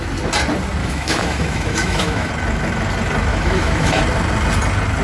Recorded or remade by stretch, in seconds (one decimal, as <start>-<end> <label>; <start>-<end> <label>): 0.0-0.8 recorded; 0.8-2.3 remade; 2.3-3.3 recorded; 3.3-4.0 remade; 4.0-5.0 recorded